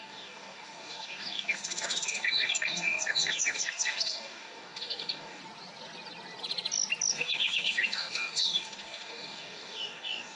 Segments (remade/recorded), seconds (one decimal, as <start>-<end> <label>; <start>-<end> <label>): 0.0-5.4 remade; 5.4-7.1 recorded; 7.1-10.4 remade